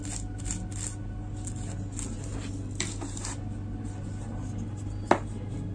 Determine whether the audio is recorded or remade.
recorded